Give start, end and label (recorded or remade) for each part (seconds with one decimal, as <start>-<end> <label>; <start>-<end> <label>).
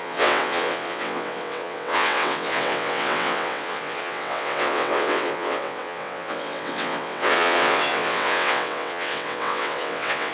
0.0-10.3 remade